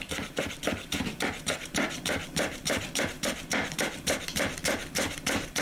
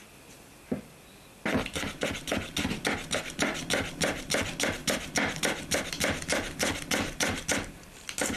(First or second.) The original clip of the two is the second